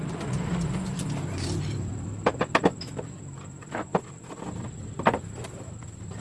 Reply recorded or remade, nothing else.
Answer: recorded